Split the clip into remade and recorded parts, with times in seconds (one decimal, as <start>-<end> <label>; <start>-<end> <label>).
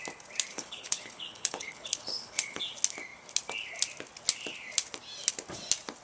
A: 0.0-0.5 recorded; 0.5-2.6 remade; 2.6-6.0 recorded